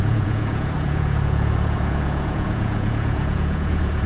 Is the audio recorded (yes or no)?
no